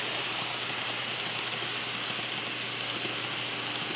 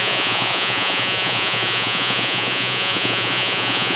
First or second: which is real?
first